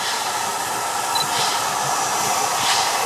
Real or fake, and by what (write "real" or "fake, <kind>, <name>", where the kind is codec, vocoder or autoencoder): real